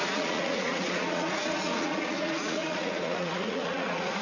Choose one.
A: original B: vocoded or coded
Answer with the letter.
B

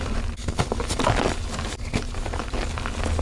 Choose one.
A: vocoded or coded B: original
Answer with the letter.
B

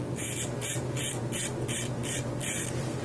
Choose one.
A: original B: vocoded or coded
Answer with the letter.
A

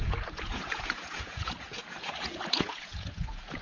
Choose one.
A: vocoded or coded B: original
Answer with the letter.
A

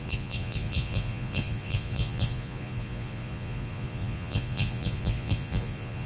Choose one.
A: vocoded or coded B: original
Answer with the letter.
A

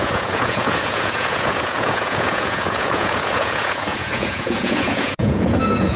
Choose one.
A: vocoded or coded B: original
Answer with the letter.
A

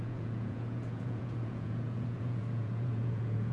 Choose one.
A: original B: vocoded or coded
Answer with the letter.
B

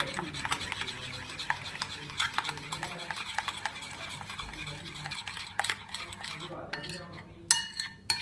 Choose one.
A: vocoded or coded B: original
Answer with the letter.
B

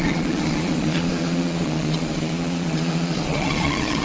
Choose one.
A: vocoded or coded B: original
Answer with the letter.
A